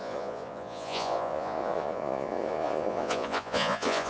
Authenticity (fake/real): fake